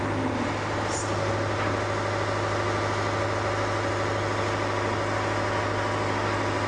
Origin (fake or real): real